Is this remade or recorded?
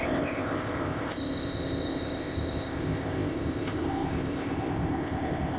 remade